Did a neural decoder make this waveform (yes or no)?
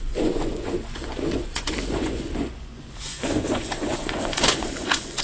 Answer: yes